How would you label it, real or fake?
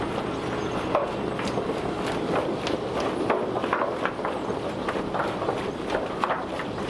real